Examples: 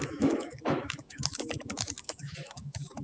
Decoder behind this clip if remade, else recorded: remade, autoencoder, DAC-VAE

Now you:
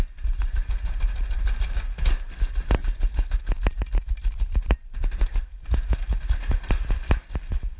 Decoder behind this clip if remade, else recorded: recorded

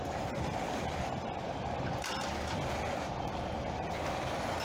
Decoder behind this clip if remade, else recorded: recorded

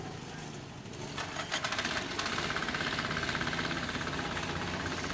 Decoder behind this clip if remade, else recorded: recorded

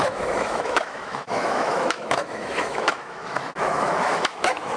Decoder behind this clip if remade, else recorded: remade, autoencoder, DAC-VAE